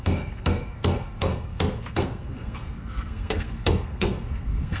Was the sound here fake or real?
fake